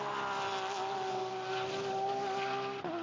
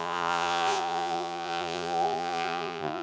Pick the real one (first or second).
first